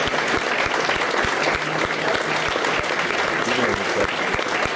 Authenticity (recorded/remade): recorded